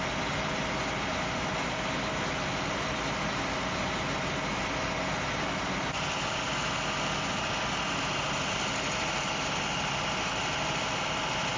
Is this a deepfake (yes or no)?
no